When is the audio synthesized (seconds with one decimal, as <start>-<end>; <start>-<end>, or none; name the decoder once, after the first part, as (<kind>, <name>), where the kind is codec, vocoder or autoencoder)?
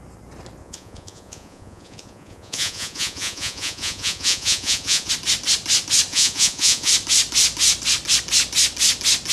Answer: 0.6-5.1 (vocoder, Vocos); 6.1-6.9